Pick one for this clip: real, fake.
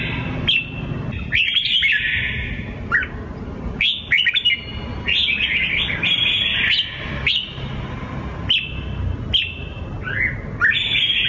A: real